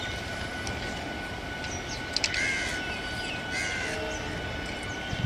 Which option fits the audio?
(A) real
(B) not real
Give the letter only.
A